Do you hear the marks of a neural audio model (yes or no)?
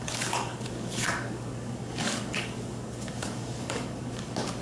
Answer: yes